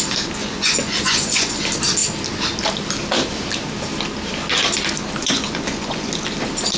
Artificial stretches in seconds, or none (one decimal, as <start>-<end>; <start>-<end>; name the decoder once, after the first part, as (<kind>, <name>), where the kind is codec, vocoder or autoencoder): 0.4-1.5 (vocoder, Vocos); 5.2-6.1